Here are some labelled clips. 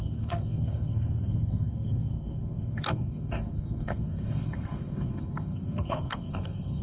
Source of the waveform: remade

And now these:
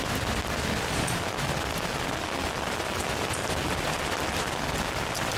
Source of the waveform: recorded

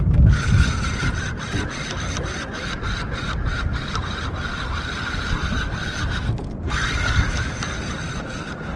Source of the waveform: recorded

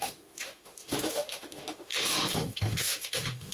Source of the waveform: remade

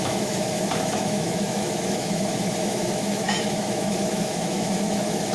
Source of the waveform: remade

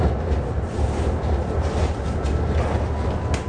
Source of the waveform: recorded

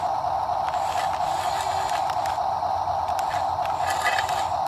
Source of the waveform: recorded